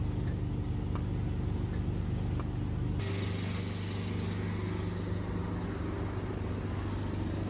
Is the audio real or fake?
real